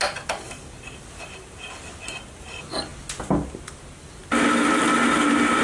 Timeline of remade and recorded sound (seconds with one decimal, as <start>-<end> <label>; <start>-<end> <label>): 0.0-5.6 recorded